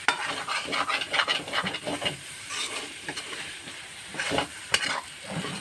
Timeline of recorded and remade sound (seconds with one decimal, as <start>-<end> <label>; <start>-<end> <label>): 0.0-1.9 recorded; 1.9-4.8 remade; 4.8-5.6 recorded